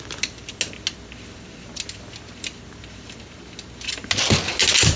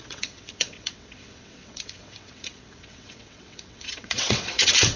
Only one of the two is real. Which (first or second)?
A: first